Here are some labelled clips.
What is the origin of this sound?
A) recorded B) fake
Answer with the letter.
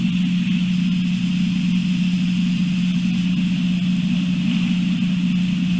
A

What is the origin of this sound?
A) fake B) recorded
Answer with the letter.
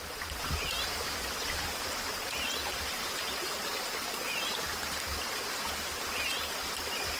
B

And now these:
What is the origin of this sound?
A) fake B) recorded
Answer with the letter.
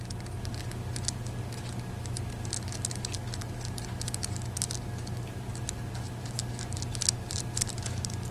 B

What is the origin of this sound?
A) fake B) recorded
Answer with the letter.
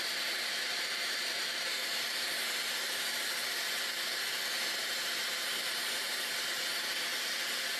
A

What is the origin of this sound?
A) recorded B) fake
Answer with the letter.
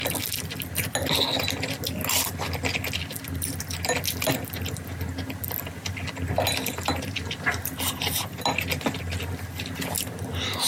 A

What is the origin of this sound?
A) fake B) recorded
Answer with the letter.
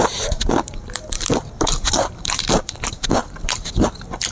A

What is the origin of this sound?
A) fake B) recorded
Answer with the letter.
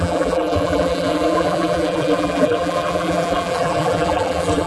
A